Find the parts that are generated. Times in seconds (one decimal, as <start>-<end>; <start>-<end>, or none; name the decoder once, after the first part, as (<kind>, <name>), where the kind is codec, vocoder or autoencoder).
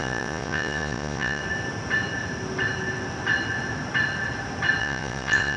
0.0-1.4 (vocoder, Vocos); 4.8-5.6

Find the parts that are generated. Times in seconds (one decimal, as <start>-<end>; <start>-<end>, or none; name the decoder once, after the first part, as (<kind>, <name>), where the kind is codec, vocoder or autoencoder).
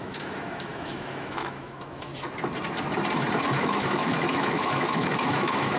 0.0-2.1 (autoencoder, DAC-VAE); 3.4-5.8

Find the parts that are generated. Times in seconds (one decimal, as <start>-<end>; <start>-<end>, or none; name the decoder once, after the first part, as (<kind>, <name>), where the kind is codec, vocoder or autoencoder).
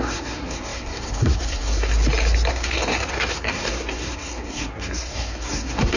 0.0-1.9 (codec, SNAC); 2.5-6.0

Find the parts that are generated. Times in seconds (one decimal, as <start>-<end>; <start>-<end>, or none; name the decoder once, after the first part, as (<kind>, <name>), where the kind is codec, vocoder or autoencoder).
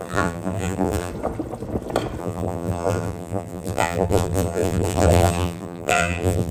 0.0-1.1 (vocoder, BigVGAN v2); 2.2-6.5